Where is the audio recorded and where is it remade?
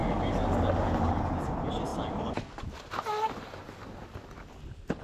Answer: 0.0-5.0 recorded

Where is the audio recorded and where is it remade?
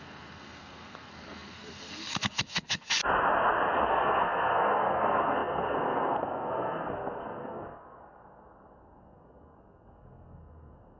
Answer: 0.0-3.0 remade; 3.0-3.9 recorded; 3.9-11.0 remade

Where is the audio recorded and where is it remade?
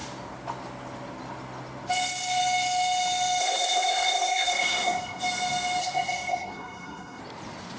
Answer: 0.0-3.4 recorded; 3.4-5.2 remade; 5.2-5.8 recorded; 5.8-7.2 remade; 7.2-7.8 recorded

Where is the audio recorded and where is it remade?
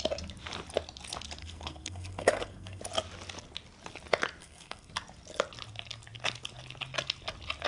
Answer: 0.0-1.4 recorded; 1.4-2.8 remade; 2.8-4.4 recorded; 4.4-4.9 remade; 4.9-7.7 recorded